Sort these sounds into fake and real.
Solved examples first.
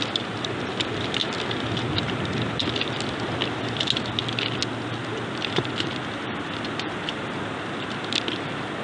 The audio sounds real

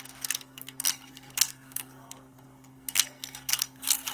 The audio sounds fake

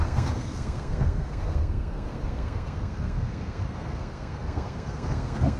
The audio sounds fake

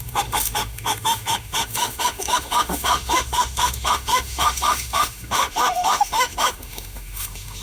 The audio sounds fake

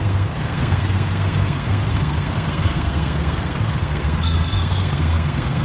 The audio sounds fake